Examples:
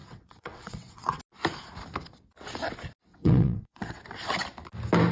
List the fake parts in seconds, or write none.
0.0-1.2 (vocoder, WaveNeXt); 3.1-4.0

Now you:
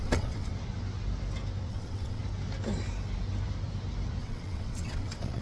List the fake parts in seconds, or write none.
0.0-0.5 (vocoder, WaveNeXt); 1.7-2.2; 4.2-5.4